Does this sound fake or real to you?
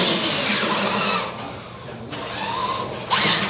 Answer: real